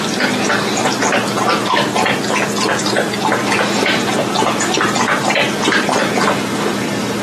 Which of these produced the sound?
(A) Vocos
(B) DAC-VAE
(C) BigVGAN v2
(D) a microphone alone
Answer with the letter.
D